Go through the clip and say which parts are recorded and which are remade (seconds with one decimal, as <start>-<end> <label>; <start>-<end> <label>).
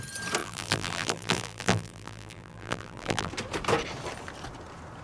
0.0-0.4 recorded; 0.4-3.3 remade; 3.3-5.0 recorded